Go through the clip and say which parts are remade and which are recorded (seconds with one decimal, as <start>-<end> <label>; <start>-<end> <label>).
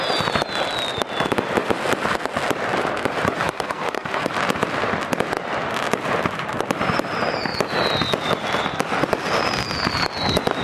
0.0-3.4 recorded; 3.4-4.3 remade; 4.3-10.6 recorded